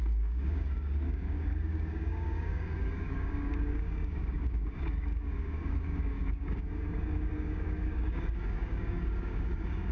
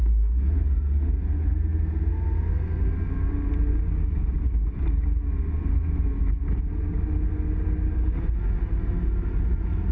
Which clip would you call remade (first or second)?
first